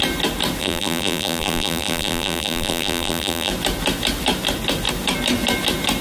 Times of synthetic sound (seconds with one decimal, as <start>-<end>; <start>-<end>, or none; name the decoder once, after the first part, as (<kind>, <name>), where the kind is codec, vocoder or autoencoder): 0.6-3.5 (vocoder, BigVGAN v2)